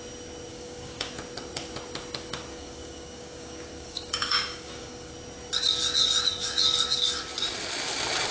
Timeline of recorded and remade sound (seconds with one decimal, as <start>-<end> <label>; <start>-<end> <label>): 0.0-0.5 recorded; 0.5-1.1 remade; 1.1-2.5 recorded; 2.5-5.1 remade; 5.1-8.3 recorded